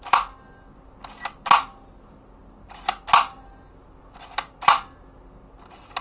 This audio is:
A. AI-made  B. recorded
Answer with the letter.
B